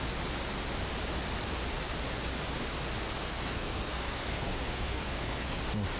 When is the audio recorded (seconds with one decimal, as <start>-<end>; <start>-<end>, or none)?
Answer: 0.0-3.2; 5.6-6.0